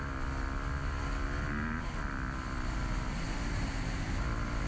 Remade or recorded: recorded